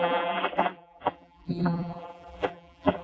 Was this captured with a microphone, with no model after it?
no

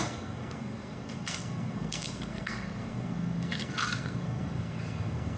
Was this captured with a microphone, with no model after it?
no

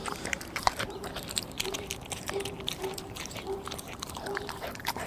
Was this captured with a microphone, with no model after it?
no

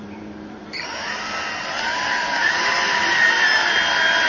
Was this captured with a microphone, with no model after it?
no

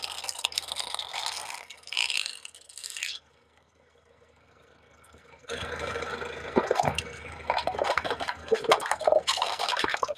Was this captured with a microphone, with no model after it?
no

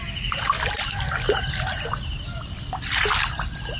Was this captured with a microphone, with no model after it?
yes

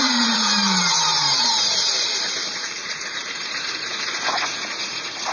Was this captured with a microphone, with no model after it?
no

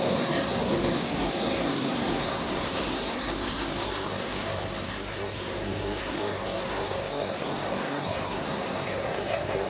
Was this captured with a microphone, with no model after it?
no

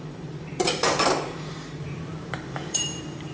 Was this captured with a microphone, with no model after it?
no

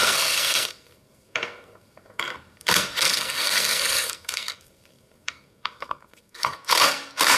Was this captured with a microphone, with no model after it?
no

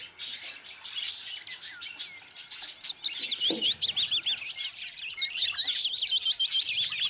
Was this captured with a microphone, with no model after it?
yes